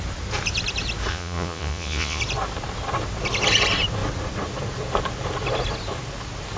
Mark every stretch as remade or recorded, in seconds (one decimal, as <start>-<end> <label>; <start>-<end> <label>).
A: 0.0-1.1 recorded; 1.1-2.2 remade; 2.2-6.6 recorded